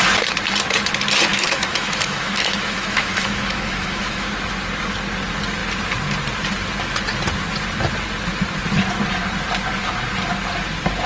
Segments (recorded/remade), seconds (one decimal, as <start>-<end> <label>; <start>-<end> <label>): 0.0-1.3 recorded; 1.3-4.3 remade; 4.3-11.1 recorded